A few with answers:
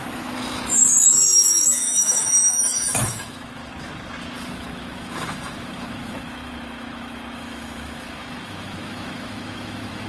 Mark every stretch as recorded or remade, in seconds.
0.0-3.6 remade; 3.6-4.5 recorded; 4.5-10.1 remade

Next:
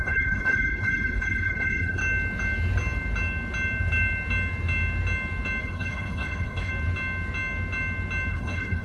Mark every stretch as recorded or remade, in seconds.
0.0-2.0 remade; 2.0-5.6 recorded; 5.6-6.7 remade; 6.7-8.3 recorded; 8.3-8.8 remade

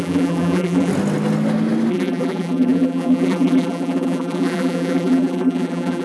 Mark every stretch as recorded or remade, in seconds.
0.0-0.9 remade; 0.9-1.9 recorded; 1.9-6.0 remade

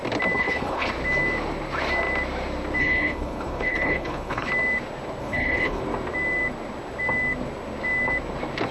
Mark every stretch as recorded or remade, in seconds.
0.0-0.4 recorded; 0.4-0.9 remade; 0.9-2.8 recorded; 2.8-4.5 remade; 4.5-5.2 recorded; 5.2-5.8 remade; 5.8-8.7 recorded

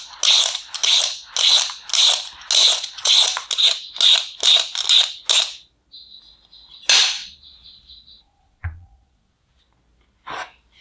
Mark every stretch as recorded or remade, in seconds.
0.0-2.6 recorded; 2.6-3.1 remade; 3.1-7.2 recorded; 7.2-9.6 remade; 9.6-10.8 recorded